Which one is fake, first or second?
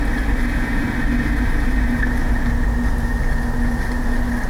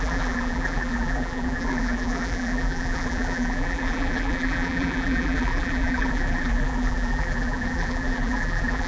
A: second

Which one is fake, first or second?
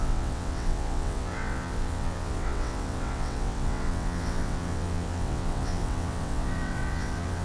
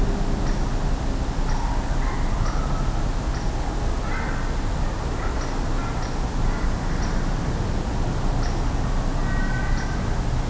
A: first